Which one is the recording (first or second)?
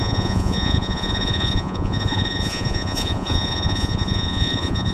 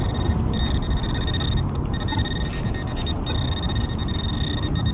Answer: second